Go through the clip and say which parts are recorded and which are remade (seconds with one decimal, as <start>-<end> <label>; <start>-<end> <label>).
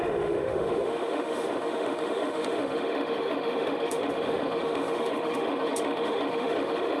0.0-7.0 remade